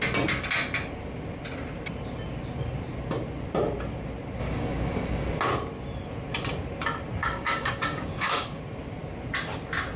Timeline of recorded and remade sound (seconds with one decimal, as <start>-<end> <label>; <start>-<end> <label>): 0.0-4.4 recorded; 4.4-5.4 remade; 5.4-7.2 recorded; 7.2-8.6 remade; 8.6-10.0 recorded